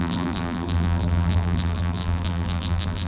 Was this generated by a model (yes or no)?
yes